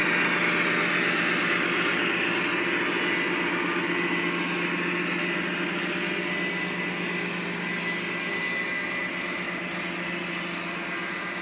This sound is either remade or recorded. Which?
recorded